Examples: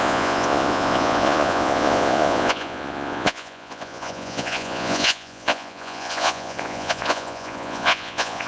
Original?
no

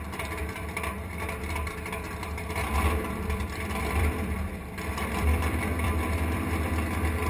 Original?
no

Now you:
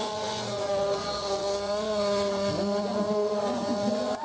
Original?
no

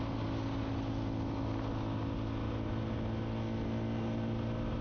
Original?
yes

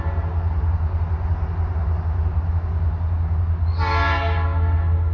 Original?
yes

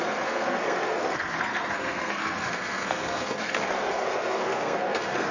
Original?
no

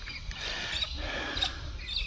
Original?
yes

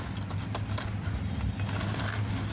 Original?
yes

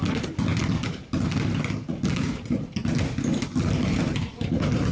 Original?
yes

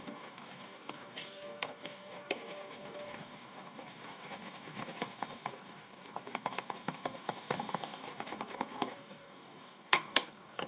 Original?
no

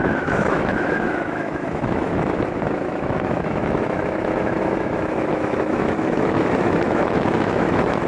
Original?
no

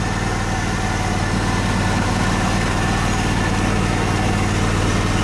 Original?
yes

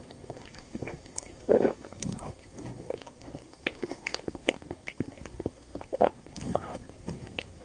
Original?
no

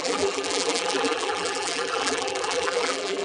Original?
no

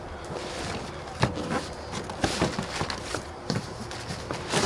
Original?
yes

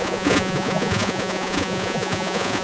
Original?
no